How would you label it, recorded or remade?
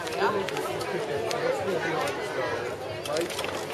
recorded